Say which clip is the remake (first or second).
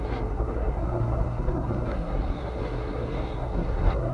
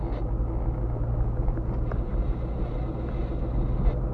first